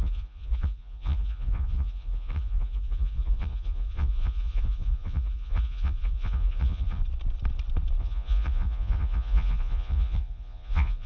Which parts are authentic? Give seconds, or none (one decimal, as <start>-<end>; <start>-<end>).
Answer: 7.0-8.0